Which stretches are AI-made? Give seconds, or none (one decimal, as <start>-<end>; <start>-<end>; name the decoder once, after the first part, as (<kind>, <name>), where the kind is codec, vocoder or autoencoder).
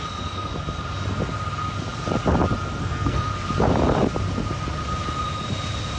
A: 0.0-0.5 (codec, SNAC); 2.8-3.3